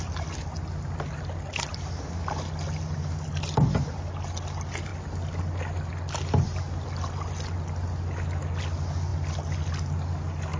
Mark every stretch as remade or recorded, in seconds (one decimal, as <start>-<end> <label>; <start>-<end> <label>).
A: 0.0-10.6 recorded